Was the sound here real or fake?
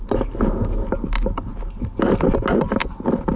real